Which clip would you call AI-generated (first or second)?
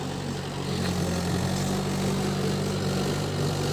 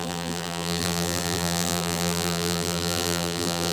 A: second